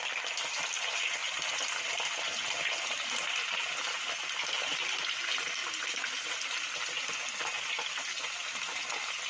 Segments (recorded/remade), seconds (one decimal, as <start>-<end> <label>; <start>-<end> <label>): 0.0-9.3 recorded